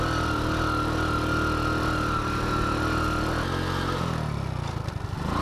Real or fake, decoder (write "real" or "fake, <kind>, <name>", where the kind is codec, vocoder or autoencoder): real